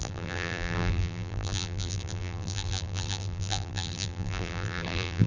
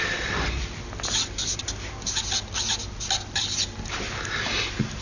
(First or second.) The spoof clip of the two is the first